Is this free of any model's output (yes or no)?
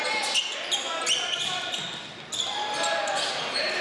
yes